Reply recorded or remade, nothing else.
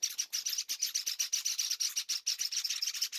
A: recorded